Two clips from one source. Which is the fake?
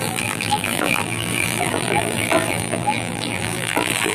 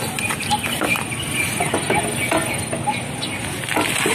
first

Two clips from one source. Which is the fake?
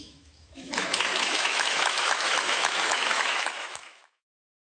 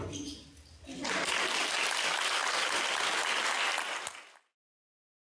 first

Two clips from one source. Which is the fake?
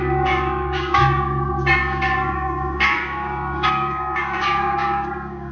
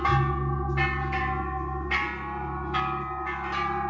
first